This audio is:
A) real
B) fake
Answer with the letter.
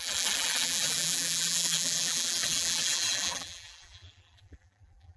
B